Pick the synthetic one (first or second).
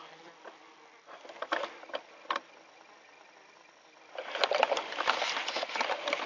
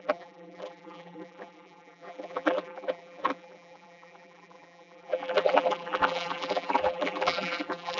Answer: second